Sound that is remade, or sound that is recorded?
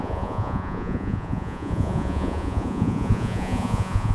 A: remade